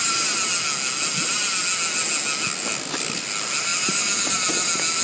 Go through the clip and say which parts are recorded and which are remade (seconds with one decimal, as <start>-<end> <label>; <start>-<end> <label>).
0.0-5.0 recorded